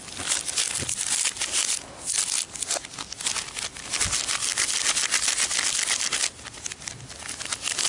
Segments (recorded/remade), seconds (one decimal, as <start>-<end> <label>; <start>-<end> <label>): 0.0-7.9 recorded